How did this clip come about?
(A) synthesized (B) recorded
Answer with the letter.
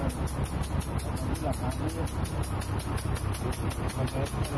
B